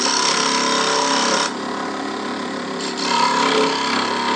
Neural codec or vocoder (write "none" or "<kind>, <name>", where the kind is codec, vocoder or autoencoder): none